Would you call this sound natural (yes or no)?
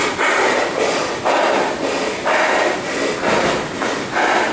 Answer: yes